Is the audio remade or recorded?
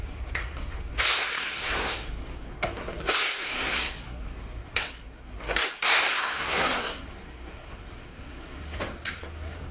remade